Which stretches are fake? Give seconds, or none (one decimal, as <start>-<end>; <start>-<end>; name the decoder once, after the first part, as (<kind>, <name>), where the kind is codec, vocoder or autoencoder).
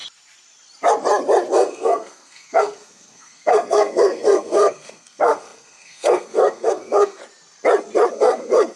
1.5-7.2 (codec, SNAC); 8.1-8.8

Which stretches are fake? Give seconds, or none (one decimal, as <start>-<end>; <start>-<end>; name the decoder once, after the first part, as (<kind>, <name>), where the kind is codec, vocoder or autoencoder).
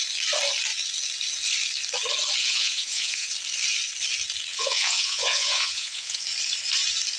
2.4-3.3 (vocoder, Vocos); 4.5-6.2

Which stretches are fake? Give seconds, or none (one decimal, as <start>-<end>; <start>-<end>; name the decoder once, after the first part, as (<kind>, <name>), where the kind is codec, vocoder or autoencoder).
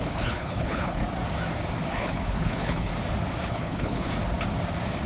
0.0-1.0 (codec, HILCodec); 1.9-2.9; 3.5-4.1